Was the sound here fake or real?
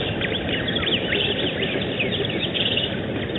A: real